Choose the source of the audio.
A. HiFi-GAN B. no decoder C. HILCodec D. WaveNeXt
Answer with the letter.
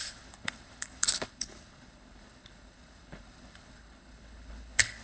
C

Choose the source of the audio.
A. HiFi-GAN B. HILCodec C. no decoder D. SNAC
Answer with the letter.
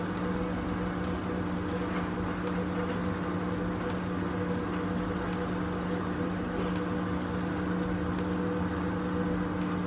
C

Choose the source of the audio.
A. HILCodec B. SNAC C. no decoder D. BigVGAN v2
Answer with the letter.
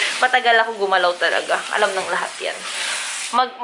C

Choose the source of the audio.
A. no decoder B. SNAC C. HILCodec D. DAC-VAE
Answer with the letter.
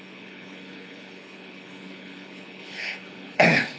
C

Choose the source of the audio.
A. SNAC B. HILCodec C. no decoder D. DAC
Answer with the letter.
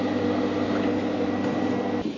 C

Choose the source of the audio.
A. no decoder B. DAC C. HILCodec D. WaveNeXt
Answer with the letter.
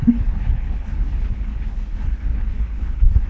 C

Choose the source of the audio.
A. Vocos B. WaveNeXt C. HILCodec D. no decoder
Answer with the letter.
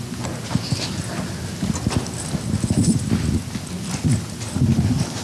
D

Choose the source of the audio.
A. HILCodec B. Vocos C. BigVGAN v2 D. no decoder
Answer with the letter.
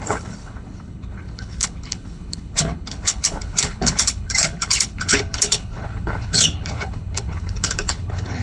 A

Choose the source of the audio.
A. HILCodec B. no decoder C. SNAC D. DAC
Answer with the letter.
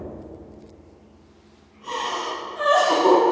B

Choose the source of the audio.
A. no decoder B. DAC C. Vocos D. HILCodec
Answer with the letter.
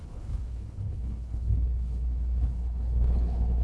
D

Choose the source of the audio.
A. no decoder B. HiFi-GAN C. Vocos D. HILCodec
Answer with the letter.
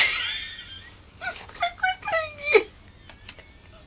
A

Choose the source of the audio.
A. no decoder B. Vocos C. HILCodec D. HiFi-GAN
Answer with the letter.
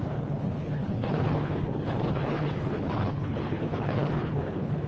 C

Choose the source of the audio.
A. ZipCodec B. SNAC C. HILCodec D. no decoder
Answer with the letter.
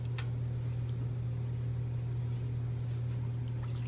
D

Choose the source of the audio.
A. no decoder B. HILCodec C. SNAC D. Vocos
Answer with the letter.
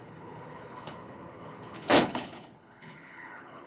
B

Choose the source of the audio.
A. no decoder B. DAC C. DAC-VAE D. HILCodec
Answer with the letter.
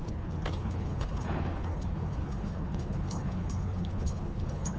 D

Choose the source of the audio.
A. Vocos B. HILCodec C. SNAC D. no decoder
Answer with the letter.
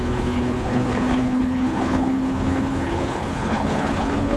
B